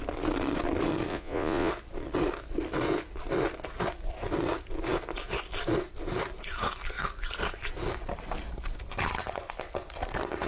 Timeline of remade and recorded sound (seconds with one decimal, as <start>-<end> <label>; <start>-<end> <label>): 0.0-1.1 recorded; 1.1-1.7 remade; 1.7-10.5 recorded